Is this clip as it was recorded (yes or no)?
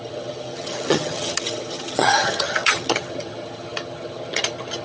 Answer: no